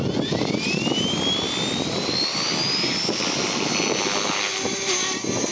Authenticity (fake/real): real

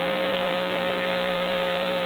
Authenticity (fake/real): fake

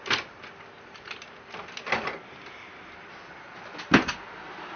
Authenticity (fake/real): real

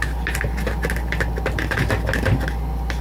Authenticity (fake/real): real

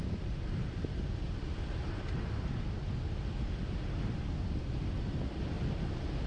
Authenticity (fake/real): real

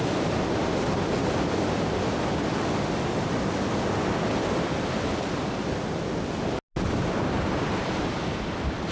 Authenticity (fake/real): real